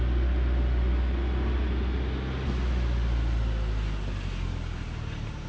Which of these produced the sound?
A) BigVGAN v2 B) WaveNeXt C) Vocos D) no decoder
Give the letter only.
D